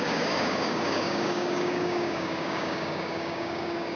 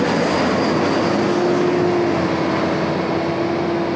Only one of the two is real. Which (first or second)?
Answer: second